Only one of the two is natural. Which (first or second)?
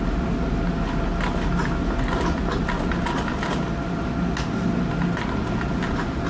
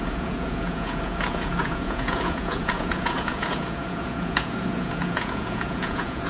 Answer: first